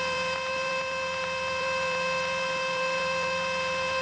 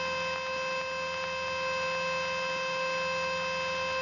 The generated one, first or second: first